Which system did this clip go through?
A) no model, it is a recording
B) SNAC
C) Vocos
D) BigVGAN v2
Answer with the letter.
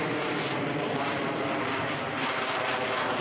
D